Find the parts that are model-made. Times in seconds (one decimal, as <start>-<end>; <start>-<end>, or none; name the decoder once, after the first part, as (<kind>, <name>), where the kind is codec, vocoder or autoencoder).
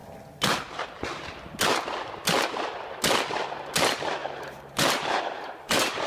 4.2-6.1 (vocoder, BigVGAN v2)